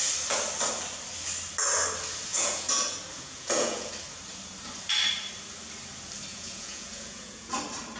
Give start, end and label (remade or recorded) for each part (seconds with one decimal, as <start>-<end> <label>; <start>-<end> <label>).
0.0-2.3 recorded; 2.3-3.9 remade; 3.9-6.3 recorded; 6.3-7.5 remade; 7.5-8.0 recorded